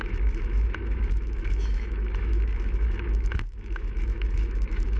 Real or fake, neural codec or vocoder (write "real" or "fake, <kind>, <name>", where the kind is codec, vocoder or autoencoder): fake, autoencoder, DAC-VAE